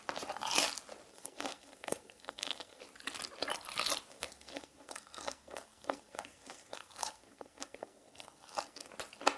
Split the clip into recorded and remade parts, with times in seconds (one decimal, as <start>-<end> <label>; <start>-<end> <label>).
0.0-1.1 recorded; 1.1-2.8 remade; 2.8-4.1 recorded; 4.1-8.9 remade; 8.9-9.4 recorded